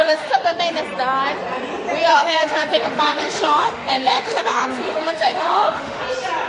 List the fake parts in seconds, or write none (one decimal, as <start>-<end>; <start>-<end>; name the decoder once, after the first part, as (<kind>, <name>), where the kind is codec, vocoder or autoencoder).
0.0-0.6 (autoencoder, DAC-VAE); 2.1-6.0